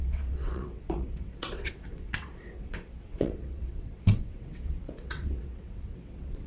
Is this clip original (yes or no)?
no